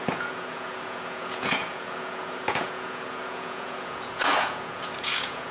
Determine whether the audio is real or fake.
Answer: fake